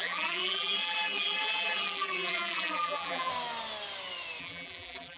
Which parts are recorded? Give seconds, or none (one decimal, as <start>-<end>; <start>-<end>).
3.3-4.4